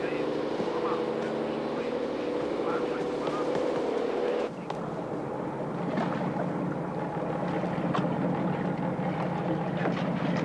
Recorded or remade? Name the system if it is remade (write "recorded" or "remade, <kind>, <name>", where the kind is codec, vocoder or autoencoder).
recorded